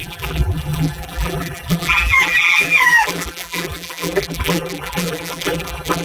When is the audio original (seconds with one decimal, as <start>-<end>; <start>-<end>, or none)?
none